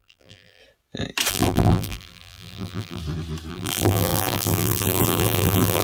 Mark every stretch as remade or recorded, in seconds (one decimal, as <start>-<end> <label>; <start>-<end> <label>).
0.0-0.6 remade; 0.6-1.3 recorded; 1.3-3.0 remade; 3.0-3.5 recorded; 3.5-5.8 remade